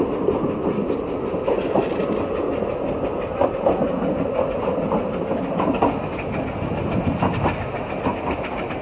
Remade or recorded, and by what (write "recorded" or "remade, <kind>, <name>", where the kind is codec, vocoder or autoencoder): recorded